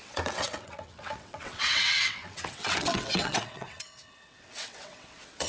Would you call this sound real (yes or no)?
no